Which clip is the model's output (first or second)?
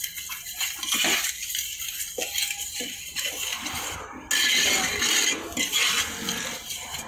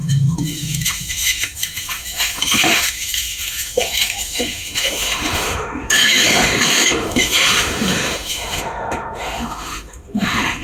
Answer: second